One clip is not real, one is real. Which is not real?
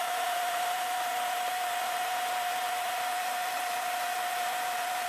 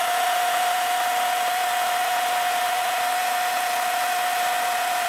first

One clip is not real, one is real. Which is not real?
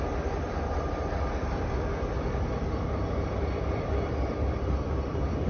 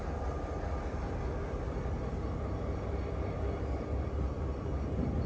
first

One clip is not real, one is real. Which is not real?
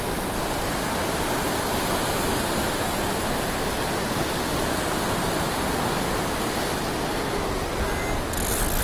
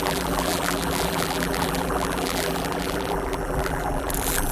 second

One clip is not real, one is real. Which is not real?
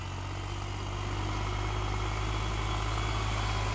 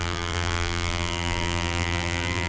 second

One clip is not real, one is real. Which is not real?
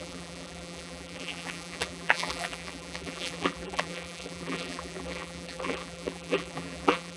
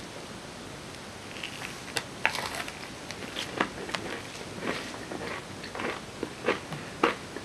first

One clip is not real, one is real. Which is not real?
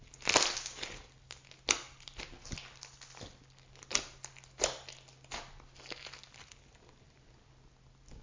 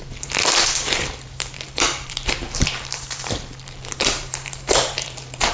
second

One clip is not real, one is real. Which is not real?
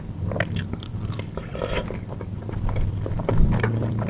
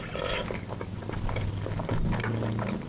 first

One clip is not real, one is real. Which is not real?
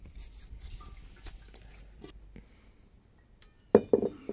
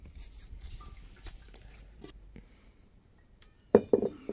second